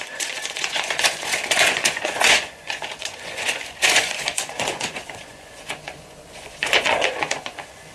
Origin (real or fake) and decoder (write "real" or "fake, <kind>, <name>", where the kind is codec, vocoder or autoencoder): fake, vocoder, Vocos